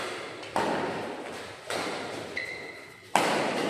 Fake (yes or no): no